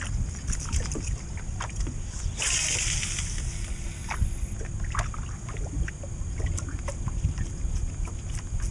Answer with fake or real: real